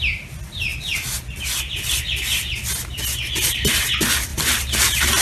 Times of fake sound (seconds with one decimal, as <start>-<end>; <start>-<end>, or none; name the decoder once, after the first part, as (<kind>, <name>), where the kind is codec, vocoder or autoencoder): 4.3-5.2 (vocoder, BigVGAN v2)